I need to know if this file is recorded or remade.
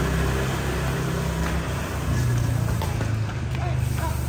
recorded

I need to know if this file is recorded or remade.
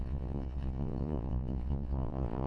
remade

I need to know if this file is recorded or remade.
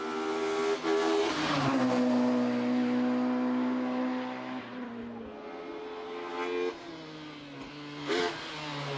recorded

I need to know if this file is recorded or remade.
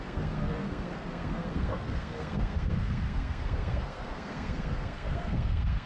remade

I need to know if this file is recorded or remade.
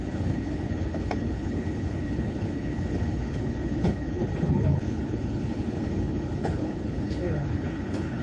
remade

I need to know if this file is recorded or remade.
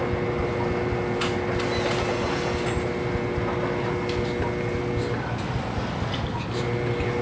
recorded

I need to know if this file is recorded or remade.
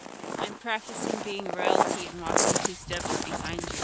recorded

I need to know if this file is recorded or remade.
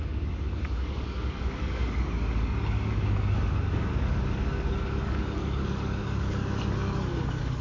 remade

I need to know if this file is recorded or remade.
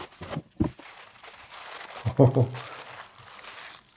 recorded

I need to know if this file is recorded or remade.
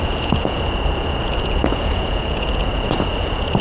remade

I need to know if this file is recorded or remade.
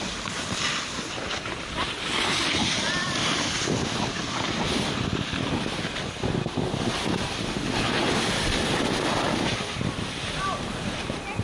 recorded